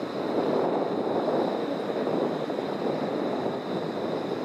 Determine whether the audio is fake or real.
real